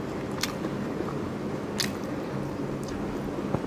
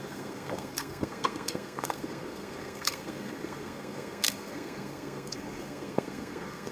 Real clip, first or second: first